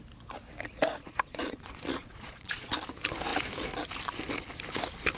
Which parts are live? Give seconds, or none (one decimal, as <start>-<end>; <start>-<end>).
0.0-0.9; 2.7-5.2